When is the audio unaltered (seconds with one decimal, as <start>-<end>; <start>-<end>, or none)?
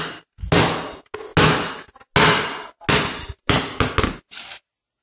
0.0-5.0